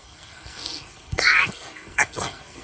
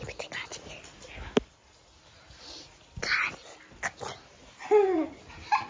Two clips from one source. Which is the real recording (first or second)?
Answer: second